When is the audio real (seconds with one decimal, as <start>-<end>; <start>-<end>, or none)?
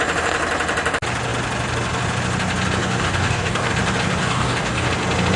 0.0-2.8; 3.7-4.2; 4.9-5.4